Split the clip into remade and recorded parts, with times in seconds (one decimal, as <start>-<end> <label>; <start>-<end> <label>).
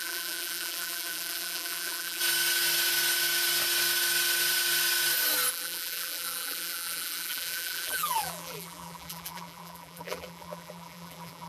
0.0-2.2 remade; 2.2-5.5 recorded; 5.5-11.5 remade